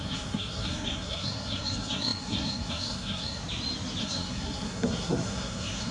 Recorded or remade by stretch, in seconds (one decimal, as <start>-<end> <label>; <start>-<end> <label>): 0.0-3.4 remade; 3.4-4.0 recorded; 4.0-5.9 remade